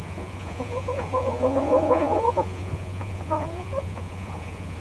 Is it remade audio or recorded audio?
remade